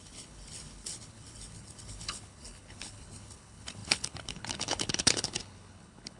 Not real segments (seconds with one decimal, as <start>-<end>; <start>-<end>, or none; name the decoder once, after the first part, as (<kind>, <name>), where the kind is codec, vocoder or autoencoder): 0.0-6.2 (codec, HILCodec)